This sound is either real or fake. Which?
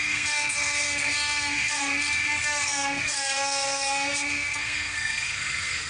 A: fake